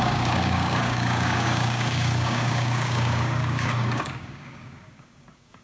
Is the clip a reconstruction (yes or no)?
yes